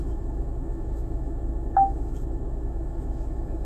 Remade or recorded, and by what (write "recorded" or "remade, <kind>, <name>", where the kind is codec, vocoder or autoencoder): remade, autoencoder, DAC-VAE